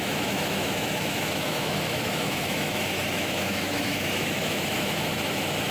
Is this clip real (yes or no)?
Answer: no